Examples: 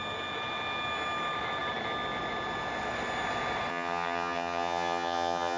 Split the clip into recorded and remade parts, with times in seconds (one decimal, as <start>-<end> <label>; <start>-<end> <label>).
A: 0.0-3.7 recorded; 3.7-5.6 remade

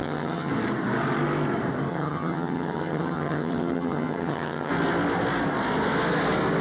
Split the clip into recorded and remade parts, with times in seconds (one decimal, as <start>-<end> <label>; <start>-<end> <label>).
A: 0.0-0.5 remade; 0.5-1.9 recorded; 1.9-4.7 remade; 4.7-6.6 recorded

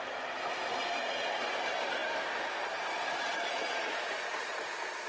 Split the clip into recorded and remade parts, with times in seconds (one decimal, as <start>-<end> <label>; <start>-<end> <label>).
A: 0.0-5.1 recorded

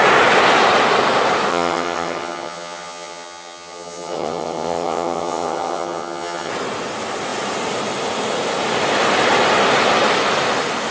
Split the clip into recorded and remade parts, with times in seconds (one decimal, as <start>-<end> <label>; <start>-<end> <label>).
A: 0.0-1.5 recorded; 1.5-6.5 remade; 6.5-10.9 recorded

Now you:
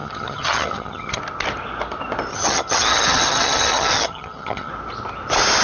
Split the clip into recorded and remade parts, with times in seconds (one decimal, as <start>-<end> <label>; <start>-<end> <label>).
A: 0.0-1.2 remade; 1.2-2.3 recorded; 2.3-4.7 remade; 4.7-5.6 recorded

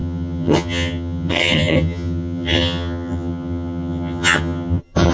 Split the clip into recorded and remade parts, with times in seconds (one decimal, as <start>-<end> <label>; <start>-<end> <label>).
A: 0.0-5.1 remade